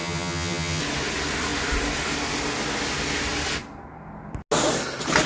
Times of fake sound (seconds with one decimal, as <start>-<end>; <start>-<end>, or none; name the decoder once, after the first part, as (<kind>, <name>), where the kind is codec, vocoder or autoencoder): 0.0-0.8 (vocoder, HiFi-GAN)